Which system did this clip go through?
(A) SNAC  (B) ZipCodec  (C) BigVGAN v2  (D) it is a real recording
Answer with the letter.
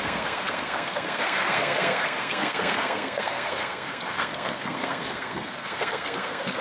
A